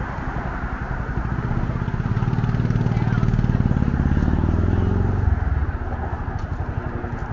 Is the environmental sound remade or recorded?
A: recorded